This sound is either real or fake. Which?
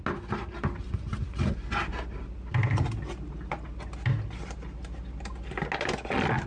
real